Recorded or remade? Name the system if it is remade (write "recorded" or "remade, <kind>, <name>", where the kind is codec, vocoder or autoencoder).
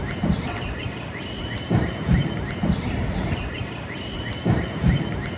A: recorded